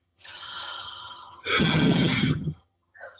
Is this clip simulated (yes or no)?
yes